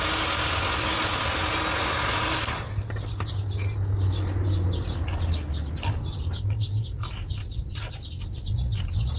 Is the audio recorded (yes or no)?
yes